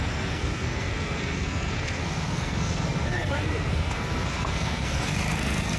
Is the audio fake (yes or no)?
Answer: yes